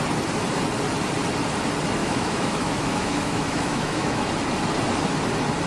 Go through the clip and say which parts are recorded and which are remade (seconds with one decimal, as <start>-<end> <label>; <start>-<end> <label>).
0.0-2.0 recorded; 2.0-4.3 remade; 4.3-5.7 recorded